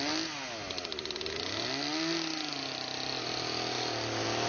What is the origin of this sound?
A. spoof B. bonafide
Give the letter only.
B